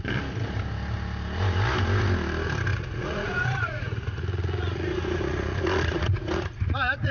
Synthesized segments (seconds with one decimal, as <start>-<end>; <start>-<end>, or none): 2.7-7.1